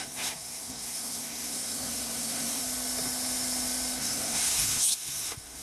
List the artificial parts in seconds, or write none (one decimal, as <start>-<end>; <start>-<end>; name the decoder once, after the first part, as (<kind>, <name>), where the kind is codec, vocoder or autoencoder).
0.0-2.6 (codec, SNAC); 4.0-5.6